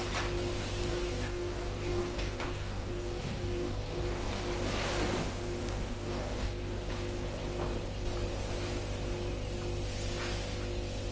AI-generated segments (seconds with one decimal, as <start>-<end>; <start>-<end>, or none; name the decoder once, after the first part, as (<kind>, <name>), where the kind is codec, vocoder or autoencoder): 0.9-4.4 (codec, DAC); 5.6-6.9